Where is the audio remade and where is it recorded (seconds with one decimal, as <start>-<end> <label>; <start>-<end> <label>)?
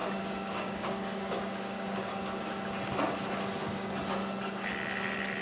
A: 0.0-2.6 remade; 2.6-5.4 recorded